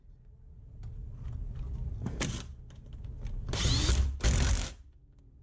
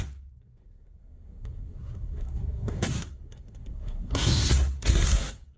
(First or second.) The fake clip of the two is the second